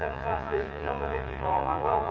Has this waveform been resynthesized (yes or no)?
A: yes